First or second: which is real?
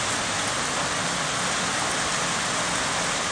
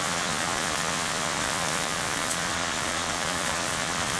first